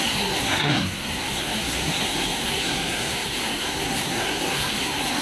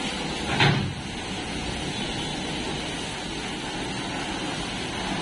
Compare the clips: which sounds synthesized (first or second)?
first